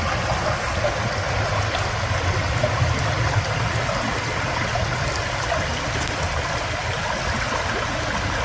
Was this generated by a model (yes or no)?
no